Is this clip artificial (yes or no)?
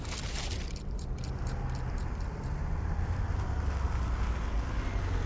no